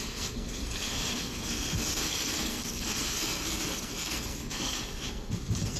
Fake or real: fake